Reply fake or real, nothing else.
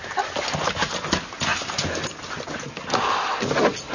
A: real